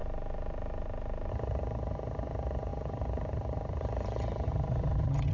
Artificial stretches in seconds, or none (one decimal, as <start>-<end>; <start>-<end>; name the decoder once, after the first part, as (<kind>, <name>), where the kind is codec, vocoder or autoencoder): 1.3-5.3 (vocoder, HiFi-GAN)